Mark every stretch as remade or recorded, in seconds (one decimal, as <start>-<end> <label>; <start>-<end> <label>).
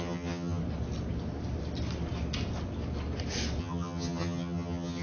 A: 0.0-0.6 remade; 0.6-3.6 recorded; 3.6-5.0 remade